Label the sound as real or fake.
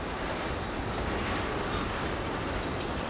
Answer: real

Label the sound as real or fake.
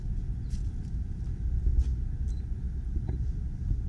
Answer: real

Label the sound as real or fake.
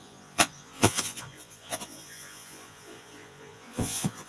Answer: fake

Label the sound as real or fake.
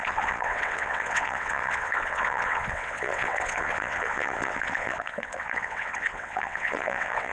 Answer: fake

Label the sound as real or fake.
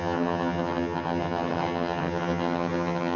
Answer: fake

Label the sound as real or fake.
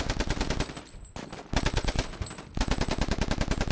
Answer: real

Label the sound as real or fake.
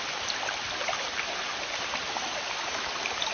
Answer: real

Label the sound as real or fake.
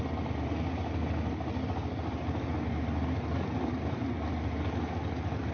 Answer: real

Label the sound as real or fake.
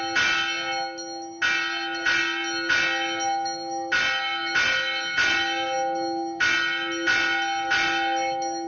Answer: real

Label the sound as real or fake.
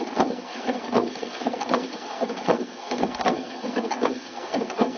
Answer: fake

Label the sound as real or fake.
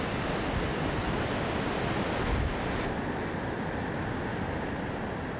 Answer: real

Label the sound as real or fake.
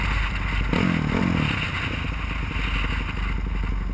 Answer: real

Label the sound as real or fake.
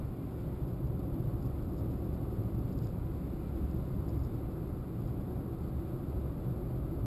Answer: real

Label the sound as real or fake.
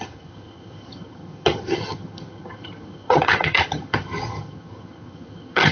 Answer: fake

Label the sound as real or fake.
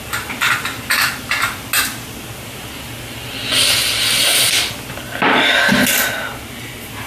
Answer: real